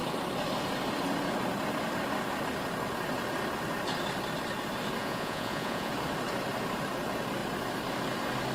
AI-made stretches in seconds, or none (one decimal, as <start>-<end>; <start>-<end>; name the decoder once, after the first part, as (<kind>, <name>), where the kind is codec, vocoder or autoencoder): 5.0-5.9 (vocoder, Vocos)